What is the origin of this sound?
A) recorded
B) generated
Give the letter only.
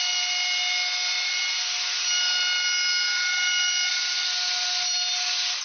A